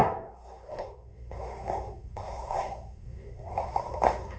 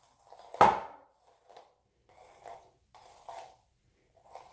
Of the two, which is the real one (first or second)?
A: second